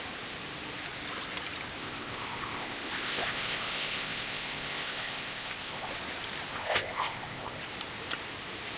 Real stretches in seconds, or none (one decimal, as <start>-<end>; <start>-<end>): 0.0-1.8; 5.9-6.5; 7.6-8.8